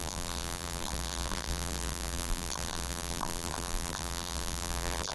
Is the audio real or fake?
fake